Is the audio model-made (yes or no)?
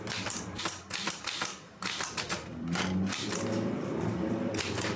yes